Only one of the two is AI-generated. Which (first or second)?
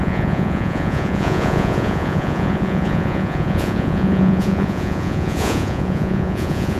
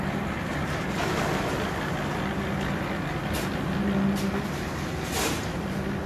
first